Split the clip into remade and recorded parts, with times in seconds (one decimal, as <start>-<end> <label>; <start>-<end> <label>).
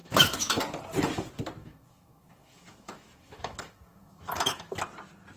0.0-0.6 remade; 0.6-1.6 recorded; 1.6-4.8 remade; 4.8-5.4 recorded